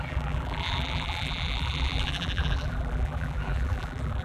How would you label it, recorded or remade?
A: remade